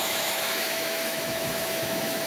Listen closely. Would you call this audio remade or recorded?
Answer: remade